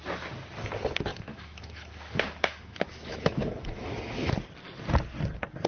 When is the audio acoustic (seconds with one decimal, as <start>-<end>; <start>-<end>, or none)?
0.0-1.1; 4.3-5.7